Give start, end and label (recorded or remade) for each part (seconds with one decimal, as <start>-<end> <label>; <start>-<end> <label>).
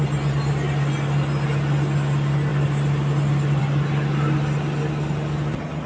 0.0-5.9 recorded